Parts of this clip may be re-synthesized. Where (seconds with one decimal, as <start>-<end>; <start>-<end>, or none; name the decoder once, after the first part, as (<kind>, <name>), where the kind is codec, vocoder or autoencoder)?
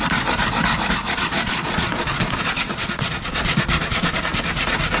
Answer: 1.2-4.2 (vocoder, Vocos)